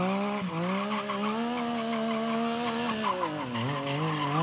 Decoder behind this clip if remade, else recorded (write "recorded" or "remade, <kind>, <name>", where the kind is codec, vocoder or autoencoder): recorded